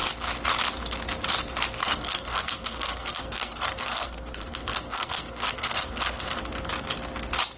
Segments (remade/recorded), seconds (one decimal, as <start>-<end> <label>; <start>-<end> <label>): 0.0-1.8 recorded; 1.8-6.4 remade; 6.4-7.6 recorded